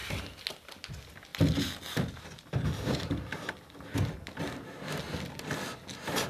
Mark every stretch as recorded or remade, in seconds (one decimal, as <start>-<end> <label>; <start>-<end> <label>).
0.0-6.3 recorded